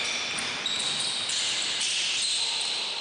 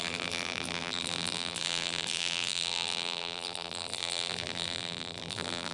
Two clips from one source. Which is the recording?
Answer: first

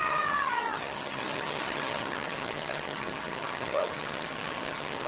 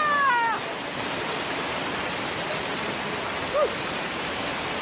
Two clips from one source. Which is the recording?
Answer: second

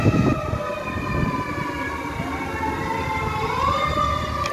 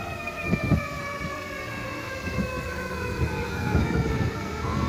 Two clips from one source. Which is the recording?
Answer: first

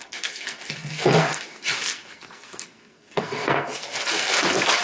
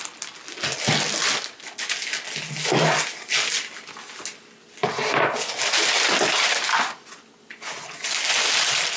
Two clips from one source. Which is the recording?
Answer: second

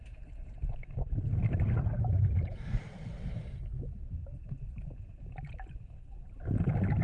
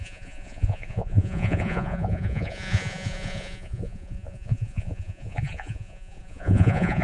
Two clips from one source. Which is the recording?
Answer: first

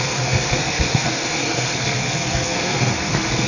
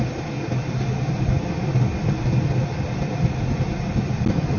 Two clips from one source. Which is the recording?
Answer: second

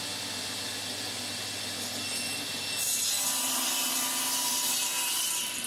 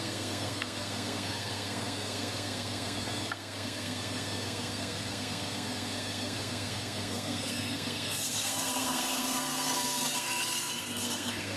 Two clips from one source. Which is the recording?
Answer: first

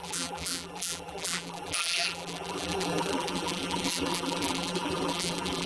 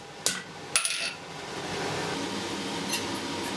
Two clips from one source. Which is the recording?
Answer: second